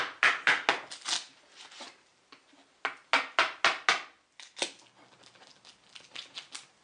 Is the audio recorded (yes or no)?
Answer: yes